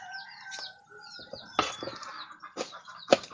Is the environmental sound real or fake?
real